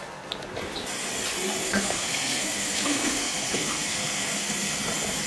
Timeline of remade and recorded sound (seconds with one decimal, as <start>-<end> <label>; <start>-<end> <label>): 0.0-1.6 recorded; 1.6-4.8 remade; 4.8-5.3 recorded